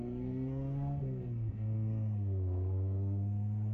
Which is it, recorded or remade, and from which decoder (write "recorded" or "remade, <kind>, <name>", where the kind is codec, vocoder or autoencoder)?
remade, codec, SNAC